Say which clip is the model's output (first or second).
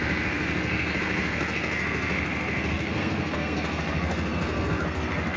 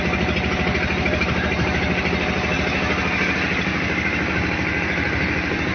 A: first